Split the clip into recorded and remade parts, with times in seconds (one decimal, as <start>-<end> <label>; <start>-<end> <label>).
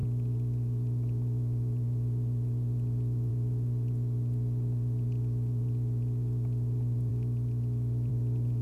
0.0-8.6 remade